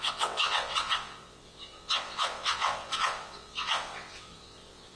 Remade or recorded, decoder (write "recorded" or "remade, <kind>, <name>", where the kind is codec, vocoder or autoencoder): remade, vocoder, WaveNeXt